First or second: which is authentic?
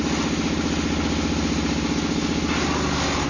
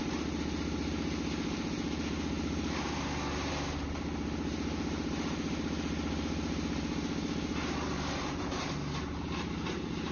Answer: first